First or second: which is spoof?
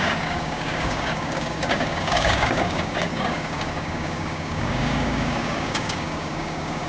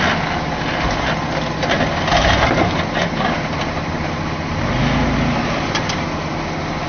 first